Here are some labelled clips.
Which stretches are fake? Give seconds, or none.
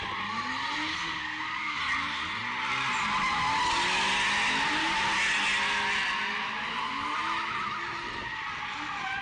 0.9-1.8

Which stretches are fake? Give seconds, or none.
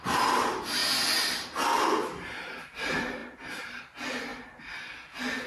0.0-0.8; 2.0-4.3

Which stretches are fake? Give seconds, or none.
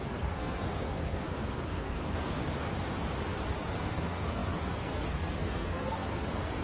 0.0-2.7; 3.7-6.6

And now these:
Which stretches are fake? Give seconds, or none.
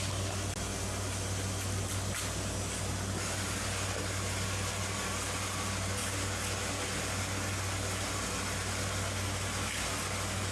none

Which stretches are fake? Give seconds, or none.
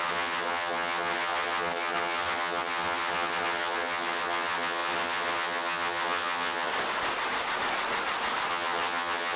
0.0-6.7; 8.5-9.4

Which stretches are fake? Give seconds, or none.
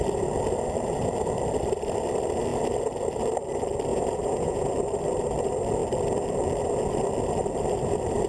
3.9-4.7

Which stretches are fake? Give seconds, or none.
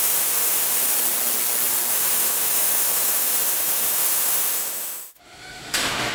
0.0-0.9; 1.9-6.1